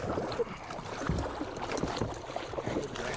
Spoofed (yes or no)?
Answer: no